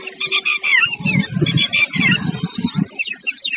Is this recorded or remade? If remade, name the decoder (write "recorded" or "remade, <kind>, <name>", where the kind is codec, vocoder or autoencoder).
recorded